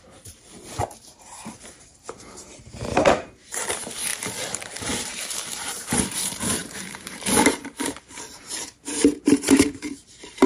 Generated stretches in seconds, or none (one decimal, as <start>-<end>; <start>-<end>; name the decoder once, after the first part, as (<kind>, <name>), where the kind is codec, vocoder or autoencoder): 0.0-4.1 (vocoder, BigVGAN v2); 4.6-10.5